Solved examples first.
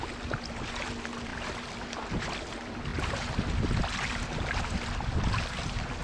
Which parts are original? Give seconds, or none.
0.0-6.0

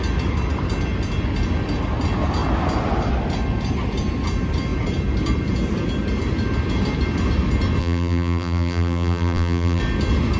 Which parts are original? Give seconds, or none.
0.0-7.8; 9.8-10.4

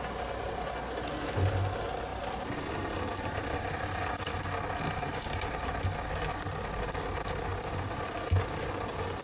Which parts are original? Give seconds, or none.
0.0-2.1; 3.0-5.1; 5.7-9.2

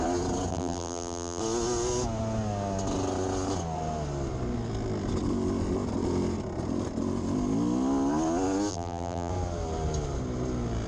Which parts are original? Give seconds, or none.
0.0-0.5; 1.4-8.7; 9.3-10.9